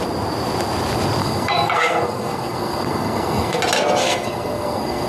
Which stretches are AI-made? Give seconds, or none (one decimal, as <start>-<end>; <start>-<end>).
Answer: 1.2-3.6; 4.0-5.1